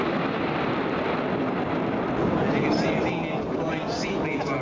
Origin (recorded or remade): recorded